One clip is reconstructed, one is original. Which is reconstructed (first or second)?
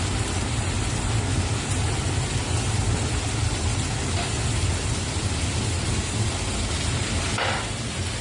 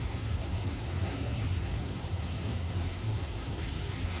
second